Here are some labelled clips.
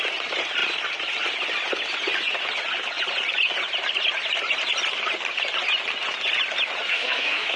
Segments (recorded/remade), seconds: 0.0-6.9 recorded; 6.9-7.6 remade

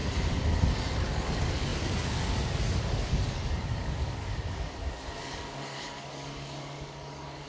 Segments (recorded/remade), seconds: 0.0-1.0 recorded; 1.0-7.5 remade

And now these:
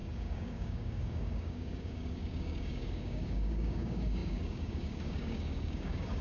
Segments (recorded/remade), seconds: 0.0-6.2 remade

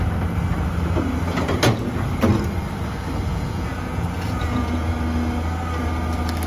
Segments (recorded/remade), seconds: 0.0-3.3 recorded; 3.3-4.9 remade; 4.9-6.5 recorded

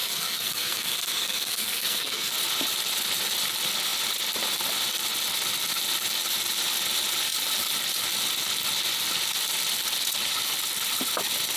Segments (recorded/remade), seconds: 0.0-2.3 remade; 2.3-11.6 recorded

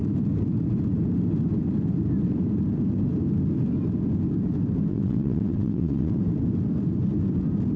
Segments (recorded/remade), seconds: 0.0-4.9 recorded; 4.9-6.2 remade; 6.2-7.8 recorded

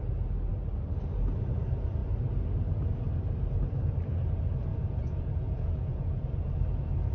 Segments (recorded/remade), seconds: 0.0-4.7 recorded; 4.7-6.5 remade; 6.5-7.1 recorded

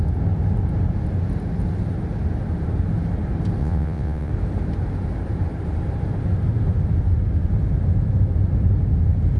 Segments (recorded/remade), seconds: 0.0-3.6 recorded; 3.6-4.3 remade; 4.3-9.4 recorded